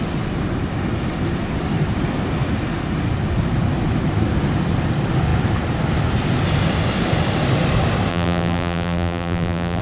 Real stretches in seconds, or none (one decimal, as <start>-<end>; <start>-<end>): 0.0-8.1